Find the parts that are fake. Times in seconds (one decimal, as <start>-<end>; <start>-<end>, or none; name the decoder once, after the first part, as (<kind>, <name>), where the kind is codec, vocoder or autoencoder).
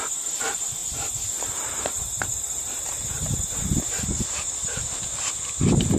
0.8-4.4 (vocoder, BigVGAN v2)